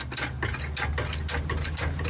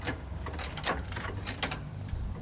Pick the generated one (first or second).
second